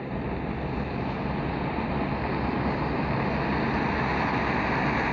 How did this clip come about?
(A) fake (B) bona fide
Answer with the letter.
B